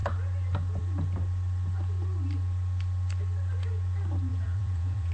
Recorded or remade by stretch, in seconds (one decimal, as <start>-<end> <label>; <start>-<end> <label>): 0.0-4.3 recorded; 4.3-5.1 remade